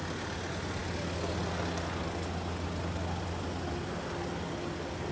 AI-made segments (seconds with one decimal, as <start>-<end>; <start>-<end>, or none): none